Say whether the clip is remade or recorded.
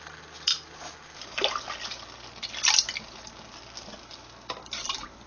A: recorded